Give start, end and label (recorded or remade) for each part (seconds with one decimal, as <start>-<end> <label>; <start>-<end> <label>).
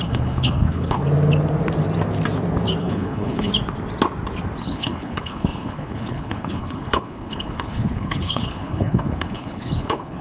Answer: 0.0-1.0 remade; 1.0-2.8 recorded; 2.8-3.5 remade; 3.5-4.6 recorded; 4.6-10.2 remade